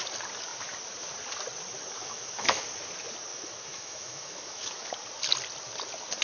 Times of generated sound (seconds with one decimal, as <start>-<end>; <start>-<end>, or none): 2.0-2.6; 3.3-4.9